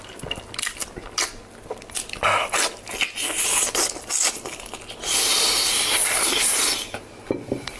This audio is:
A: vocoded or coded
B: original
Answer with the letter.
B